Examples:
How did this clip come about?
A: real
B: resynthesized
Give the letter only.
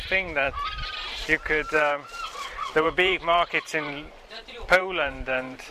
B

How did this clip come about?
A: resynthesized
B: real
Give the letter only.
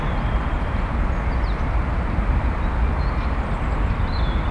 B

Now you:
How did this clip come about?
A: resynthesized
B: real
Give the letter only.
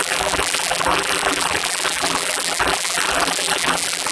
A